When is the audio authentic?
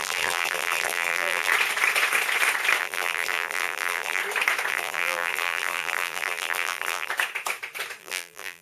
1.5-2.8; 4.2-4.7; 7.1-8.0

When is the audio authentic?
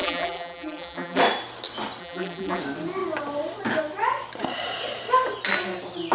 1.2-2.0; 2.6-6.1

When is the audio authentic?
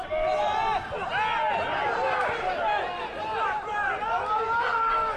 0.0-5.2